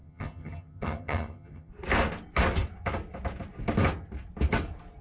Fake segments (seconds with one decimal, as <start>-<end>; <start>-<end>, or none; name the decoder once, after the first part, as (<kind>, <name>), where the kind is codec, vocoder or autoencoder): 0.0-1.7 (vocoder, HiFi-GAN)